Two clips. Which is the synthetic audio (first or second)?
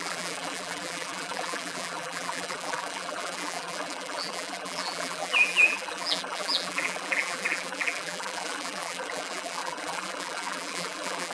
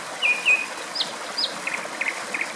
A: first